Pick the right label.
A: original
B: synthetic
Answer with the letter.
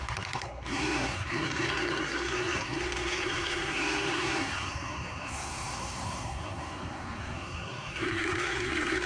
B